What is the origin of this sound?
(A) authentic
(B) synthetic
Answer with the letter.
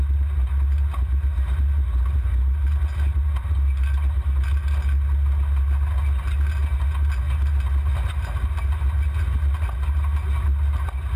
A